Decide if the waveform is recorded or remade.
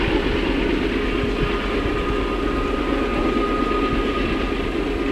recorded